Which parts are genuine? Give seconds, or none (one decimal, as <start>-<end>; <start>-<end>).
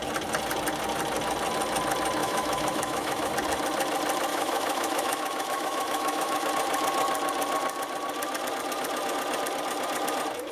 0.0-2.2; 3.3-4.3; 6.5-10.5